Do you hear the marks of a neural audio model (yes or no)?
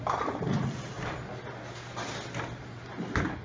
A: no